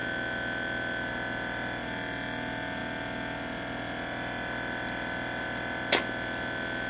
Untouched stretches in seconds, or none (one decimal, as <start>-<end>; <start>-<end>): 0.0-6.9